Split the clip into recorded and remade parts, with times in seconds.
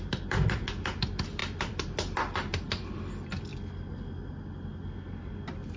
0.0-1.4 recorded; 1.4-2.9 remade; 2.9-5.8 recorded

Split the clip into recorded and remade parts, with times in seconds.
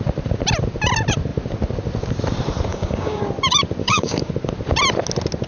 0.0-2.7 recorded; 2.7-3.2 remade; 3.2-3.8 recorded; 3.8-4.3 remade; 4.3-5.5 recorded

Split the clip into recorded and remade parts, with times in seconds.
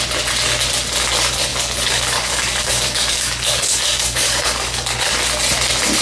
0.0-1.5 recorded; 1.5-5.1 remade; 5.1-6.0 recorded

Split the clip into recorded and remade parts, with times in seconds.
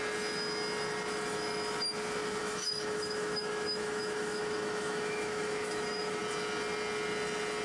0.0-2.4 recorded; 2.4-6.2 remade; 6.2-7.6 recorded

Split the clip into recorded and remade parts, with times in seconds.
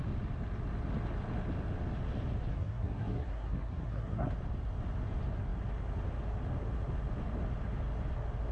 0.0-2.5 recorded; 2.5-4.3 remade; 4.3-8.5 recorded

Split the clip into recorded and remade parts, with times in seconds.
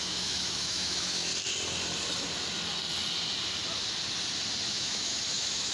0.0-1.3 remade; 1.3-4.7 recorded; 4.7-5.7 remade